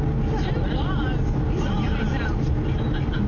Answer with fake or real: real